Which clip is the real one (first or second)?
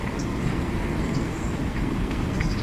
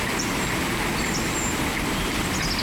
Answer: second